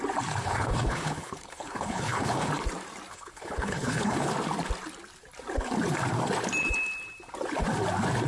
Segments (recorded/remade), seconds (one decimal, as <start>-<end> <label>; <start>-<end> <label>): 0.0-0.4 recorded; 0.4-2.5 remade; 2.5-3.1 recorded; 3.1-4.3 remade; 4.3-8.3 recorded